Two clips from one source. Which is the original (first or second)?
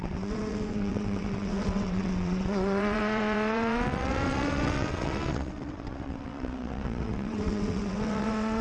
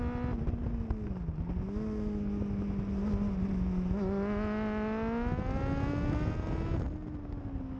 second